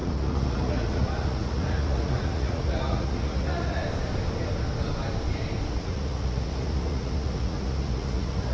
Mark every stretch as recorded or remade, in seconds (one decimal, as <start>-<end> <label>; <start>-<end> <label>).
0.0-3.8 remade; 3.8-5.7 recorded; 5.7-8.5 remade